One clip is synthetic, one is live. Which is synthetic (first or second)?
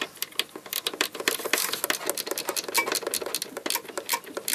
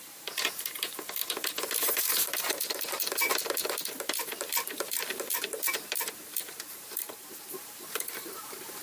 second